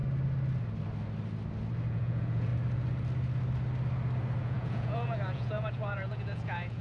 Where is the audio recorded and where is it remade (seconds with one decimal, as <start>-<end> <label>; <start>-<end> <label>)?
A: 0.0-1.9 recorded; 1.9-2.5 remade; 2.5-4.4 recorded; 4.4-6.8 remade

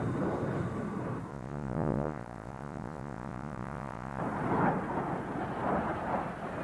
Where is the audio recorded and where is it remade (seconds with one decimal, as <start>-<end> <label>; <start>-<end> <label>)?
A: 0.0-1.3 recorded; 1.3-4.2 remade; 4.2-6.6 recorded

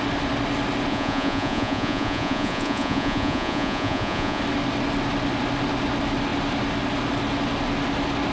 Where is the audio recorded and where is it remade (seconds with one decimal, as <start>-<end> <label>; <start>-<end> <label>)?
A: 0.0-0.9 recorded; 0.9-4.4 remade; 4.4-8.3 recorded

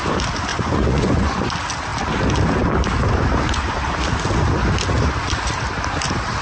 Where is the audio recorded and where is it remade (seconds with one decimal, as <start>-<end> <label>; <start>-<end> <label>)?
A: 0.0-0.5 recorded; 0.5-1.5 remade; 1.5-6.4 recorded

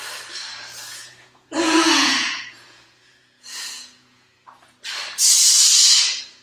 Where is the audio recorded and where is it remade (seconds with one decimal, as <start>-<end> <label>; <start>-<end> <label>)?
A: 0.0-0.9 recorded; 0.9-4.7 remade; 4.7-6.4 recorded

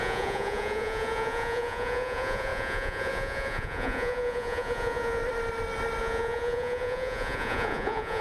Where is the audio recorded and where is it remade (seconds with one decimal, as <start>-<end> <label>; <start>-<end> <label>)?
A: 0.0-5.2 remade; 5.2-6.0 recorded; 6.0-8.2 remade

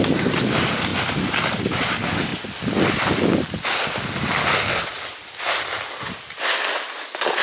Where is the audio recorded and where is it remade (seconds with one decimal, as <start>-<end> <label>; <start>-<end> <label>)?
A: 0.0-7.4 recorded